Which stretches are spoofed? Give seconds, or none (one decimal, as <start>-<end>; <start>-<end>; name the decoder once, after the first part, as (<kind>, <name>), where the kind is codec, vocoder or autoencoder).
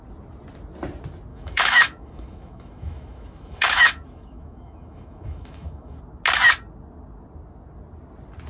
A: 1.3-6.0 (autoencoder, DAC-VAE)